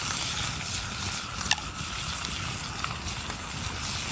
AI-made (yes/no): no